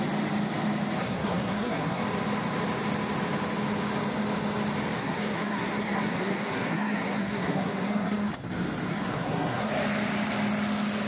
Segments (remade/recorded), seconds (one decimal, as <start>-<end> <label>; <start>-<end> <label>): 0.0-1.0 recorded; 1.0-2.0 remade; 2.0-5.0 recorded; 5.0-8.3 remade; 8.3-8.9 recorded; 8.9-9.7 remade; 9.7-11.1 recorded